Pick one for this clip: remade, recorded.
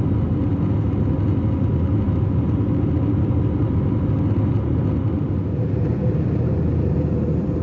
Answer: recorded